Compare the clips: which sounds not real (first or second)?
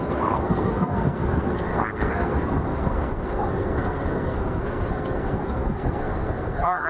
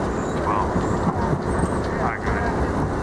first